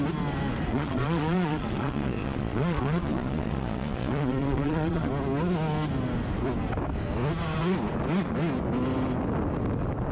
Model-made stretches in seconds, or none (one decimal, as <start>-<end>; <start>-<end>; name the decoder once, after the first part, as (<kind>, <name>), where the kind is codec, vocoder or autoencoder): 0.7-5.1 (vocoder, Vocos)